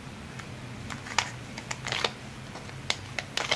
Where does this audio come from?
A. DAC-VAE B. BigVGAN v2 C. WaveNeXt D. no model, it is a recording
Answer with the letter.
D